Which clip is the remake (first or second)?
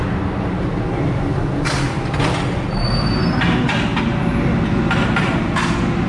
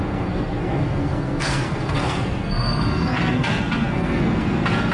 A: second